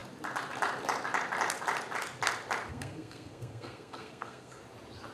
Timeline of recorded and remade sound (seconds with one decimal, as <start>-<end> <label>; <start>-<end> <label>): 0.0-2.7 recorded; 2.7-4.6 remade; 4.6-5.1 recorded

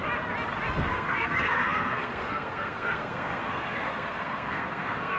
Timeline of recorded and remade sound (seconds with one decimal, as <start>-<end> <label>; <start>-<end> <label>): 0.0-0.8 recorded; 0.8-5.2 remade

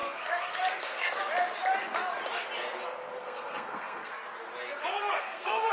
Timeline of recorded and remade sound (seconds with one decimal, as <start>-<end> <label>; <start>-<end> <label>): 0.0-1.2 remade; 1.2-3.2 recorded; 3.2-4.1 remade; 4.1-4.9 recorded; 4.9-5.7 remade

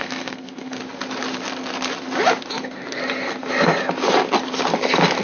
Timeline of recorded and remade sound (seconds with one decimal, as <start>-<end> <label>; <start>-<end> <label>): 0.0-0.8 remade; 0.8-2.5 recorded; 2.5-3.0 remade; 3.0-5.2 recorded

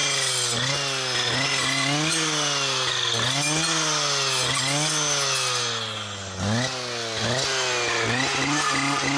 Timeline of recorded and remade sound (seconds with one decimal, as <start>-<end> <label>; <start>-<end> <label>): 0.0-9.2 recorded

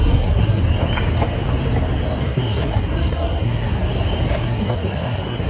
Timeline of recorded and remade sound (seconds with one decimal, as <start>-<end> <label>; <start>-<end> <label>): 0.0-0.6 remade; 0.6-2.2 recorded; 2.2-3.7 remade; 3.7-4.4 recorded; 4.4-5.5 remade